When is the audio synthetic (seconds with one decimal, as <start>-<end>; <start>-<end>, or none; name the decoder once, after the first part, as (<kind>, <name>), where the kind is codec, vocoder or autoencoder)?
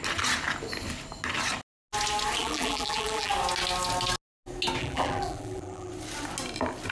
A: 2.4-3.3 (vocoder, BigVGAN v2); 4.8-5.9